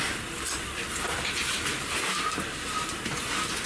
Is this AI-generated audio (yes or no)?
yes